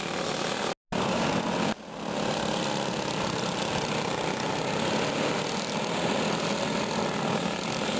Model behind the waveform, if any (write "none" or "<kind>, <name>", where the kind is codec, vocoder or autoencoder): none